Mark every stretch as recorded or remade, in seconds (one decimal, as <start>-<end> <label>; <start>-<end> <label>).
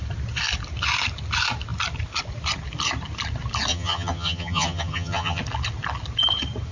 0.0-3.7 recorded; 3.7-5.4 remade; 5.4-6.7 recorded